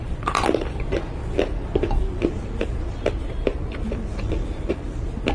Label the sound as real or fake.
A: fake